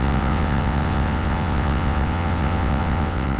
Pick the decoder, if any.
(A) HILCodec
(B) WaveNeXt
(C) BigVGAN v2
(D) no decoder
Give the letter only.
B